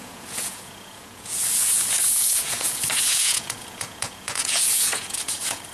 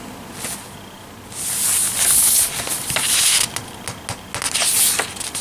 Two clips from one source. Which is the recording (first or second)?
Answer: second